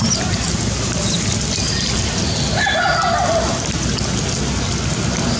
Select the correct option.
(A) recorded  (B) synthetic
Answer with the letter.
A